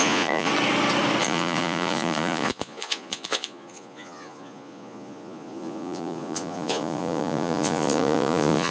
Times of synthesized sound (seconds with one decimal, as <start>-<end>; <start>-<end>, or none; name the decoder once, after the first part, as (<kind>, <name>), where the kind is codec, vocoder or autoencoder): 0.0-0.5 (vocoder, Vocos); 1.2-8.7